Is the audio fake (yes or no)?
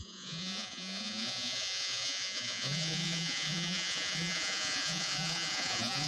yes